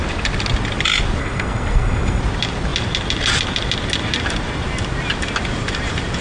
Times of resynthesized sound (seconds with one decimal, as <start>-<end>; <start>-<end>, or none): 1.2-2.2